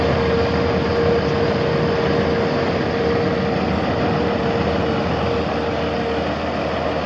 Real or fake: real